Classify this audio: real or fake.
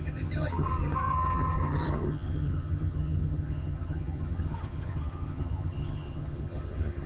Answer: fake